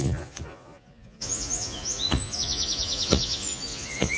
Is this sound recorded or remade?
remade